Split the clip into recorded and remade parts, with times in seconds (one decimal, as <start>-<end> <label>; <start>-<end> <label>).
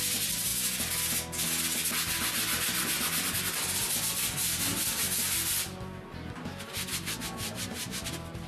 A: 0.0-8.5 recorded